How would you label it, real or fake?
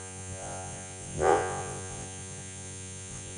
fake